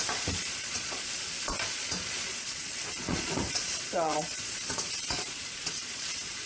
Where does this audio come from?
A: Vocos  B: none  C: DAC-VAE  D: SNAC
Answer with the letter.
A